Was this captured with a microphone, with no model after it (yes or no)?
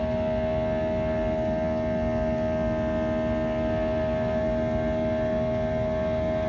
yes